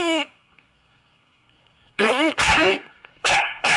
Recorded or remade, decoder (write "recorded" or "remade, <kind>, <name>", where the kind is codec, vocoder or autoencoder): remade, codec, SNAC